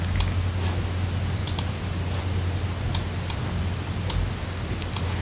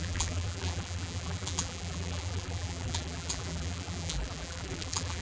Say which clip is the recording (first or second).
first